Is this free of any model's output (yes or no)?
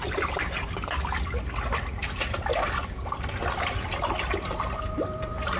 yes